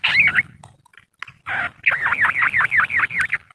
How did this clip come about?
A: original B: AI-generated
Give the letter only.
A